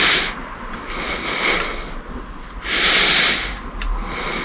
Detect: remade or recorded recorded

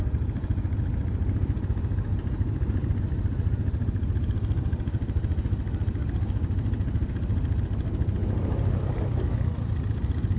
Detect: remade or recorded recorded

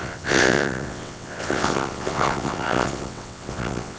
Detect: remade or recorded remade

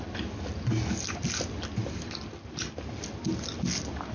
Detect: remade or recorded recorded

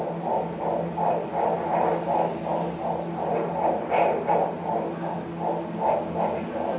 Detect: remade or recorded recorded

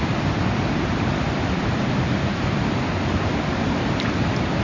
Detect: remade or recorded recorded